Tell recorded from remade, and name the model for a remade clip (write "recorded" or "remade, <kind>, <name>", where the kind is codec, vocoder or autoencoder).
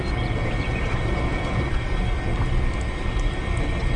recorded